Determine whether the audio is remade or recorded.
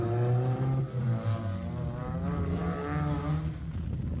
recorded